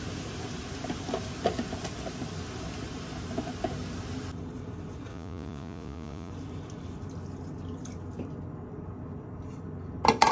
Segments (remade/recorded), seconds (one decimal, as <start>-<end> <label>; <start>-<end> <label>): 0.0-5.1 recorded; 5.1-6.3 remade; 6.3-10.3 recorded